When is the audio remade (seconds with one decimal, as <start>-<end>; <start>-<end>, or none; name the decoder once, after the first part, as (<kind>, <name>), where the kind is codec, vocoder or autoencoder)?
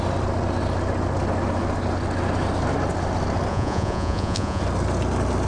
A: 3.5-4.6 (vocoder, Vocos)